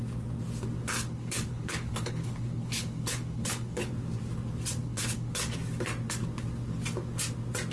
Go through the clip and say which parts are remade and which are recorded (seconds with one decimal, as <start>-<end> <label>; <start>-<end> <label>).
0.0-0.9 recorded; 0.9-3.9 remade; 3.9-4.8 recorded; 4.8-5.3 remade; 5.3-7.7 recorded